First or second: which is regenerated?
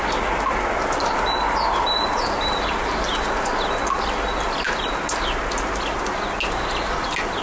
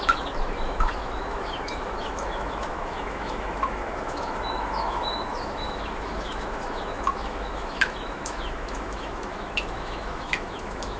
second